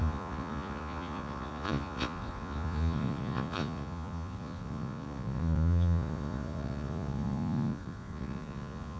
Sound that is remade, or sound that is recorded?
remade